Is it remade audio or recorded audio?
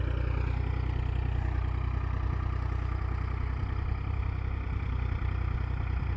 recorded